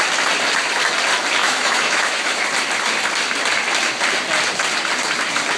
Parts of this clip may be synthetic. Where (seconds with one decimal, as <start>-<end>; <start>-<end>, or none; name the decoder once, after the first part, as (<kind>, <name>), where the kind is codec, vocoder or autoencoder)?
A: 1.4-2.4 (autoencoder, DAC-VAE)